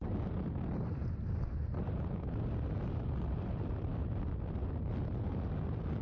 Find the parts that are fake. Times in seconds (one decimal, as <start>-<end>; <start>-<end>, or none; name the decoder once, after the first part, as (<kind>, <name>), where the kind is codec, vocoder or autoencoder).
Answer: 1.0-4.6 (vocoder, BigVGAN v2)